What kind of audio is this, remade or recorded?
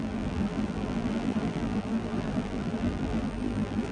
remade